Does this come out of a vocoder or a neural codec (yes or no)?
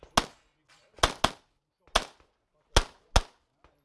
no